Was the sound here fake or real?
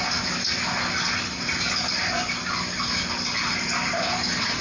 real